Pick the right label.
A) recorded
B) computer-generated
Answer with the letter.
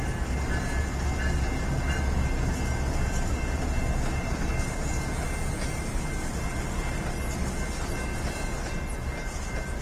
A